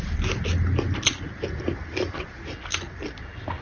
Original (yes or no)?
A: yes